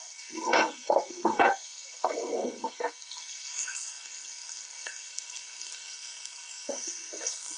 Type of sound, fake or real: fake